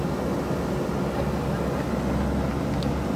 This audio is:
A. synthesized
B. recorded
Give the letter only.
B